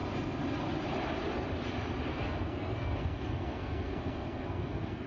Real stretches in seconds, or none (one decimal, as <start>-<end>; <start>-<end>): 0.0-2.1